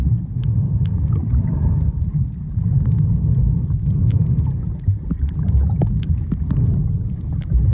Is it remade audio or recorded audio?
recorded